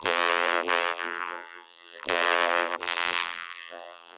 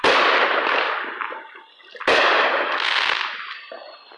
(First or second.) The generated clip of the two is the first